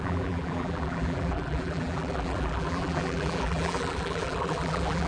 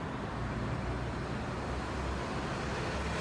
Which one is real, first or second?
second